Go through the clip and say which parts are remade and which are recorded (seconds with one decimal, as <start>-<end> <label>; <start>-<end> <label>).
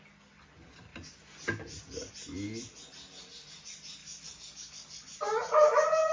0.0-4.0 recorded; 4.0-5.2 remade; 5.2-6.1 recorded